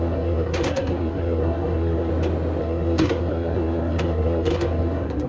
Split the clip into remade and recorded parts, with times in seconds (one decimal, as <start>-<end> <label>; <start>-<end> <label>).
0.0-2.1 remade; 2.1-2.6 recorded; 2.6-5.3 remade